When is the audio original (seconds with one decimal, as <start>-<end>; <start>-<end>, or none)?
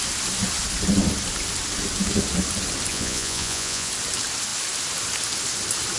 0.0-2.9; 3.9-6.0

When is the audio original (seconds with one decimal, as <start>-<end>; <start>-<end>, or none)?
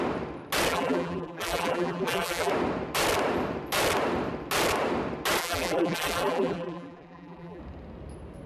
0.0-0.7; 2.5-5.4; 7.6-8.5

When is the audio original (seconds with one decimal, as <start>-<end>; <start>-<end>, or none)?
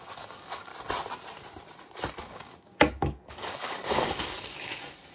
0.7-2.2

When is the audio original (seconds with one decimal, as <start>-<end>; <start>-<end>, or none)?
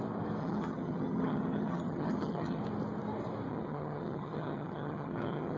0.0-0.4; 2.6-3.5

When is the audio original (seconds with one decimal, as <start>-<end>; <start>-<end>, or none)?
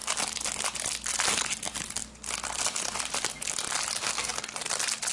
0.0-5.1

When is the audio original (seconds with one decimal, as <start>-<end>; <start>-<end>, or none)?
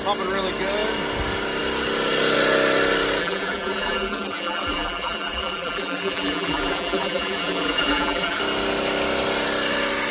0.0-3.2; 8.4-10.1